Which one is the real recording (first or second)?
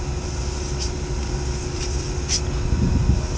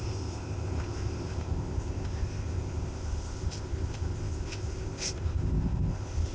first